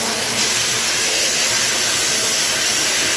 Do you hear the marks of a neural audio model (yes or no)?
no